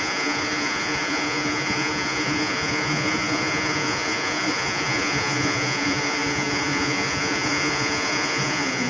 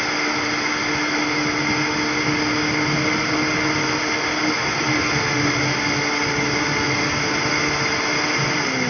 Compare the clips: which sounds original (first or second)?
second